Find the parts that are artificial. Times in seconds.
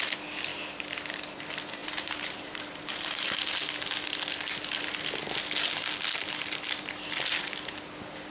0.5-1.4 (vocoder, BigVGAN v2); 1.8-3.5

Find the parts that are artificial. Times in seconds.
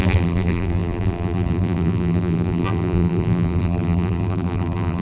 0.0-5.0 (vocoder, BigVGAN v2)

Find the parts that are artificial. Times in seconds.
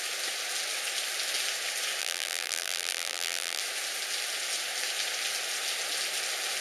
2.0-3.6 (vocoder, BigVGAN v2)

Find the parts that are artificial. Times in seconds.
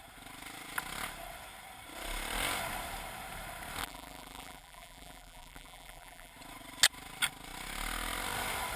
3.8-6.3 (vocoder, BigVGAN v2)